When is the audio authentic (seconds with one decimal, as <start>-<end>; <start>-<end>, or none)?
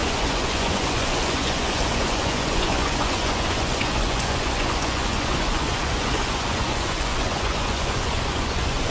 none